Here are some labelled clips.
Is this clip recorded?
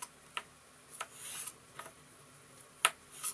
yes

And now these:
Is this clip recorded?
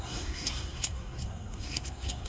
no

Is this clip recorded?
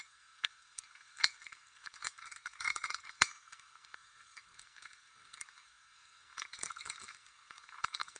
no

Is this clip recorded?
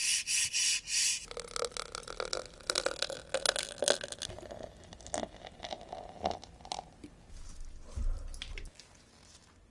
yes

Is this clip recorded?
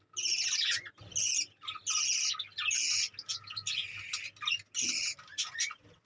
yes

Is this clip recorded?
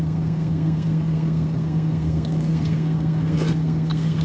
no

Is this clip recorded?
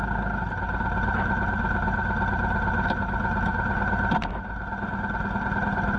yes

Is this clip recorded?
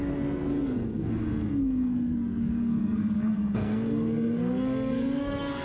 no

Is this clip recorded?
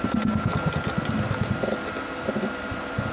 yes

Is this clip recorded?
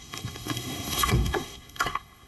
no